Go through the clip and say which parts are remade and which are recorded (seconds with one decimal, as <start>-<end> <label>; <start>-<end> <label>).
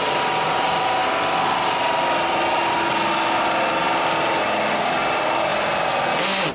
0.0-6.5 recorded